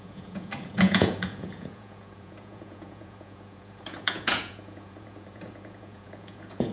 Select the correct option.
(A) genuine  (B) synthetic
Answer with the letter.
B